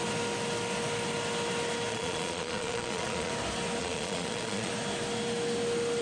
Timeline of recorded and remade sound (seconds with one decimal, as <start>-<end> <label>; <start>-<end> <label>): 0.0-1.9 recorded; 1.9-3.3 remade; 3.3-3.8 recorded; 3.8-4.7 remade; 4.7-6.0 recorded